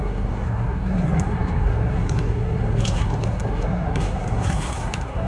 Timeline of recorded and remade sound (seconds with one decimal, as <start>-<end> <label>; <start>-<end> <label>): 0.0-5.3 remade